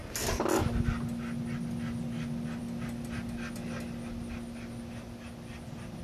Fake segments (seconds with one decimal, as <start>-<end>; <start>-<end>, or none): none